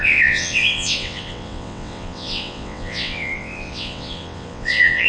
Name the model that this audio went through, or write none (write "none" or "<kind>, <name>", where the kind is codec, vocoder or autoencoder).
vocoder, WaveNeXt